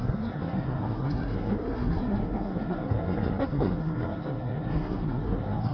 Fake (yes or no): yes